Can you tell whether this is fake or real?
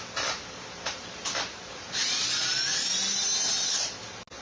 real